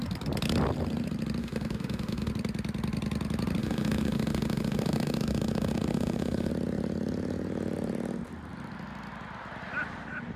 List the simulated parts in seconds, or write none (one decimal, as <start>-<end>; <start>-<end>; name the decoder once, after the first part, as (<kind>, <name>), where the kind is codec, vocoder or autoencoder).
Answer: 1.4-2.3 (autoencoder, DAC-VAE); 3.6-6.5